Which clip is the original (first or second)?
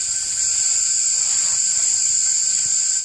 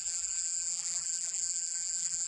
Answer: first